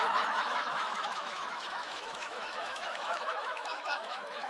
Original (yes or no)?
no